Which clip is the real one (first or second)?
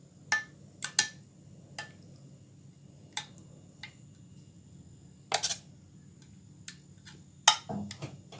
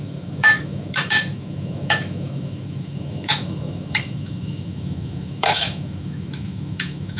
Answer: first